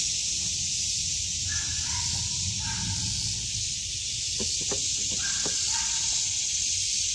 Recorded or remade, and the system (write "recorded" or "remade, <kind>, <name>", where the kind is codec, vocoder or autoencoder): recorded